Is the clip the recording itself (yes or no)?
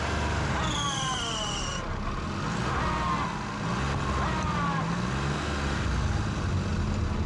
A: yes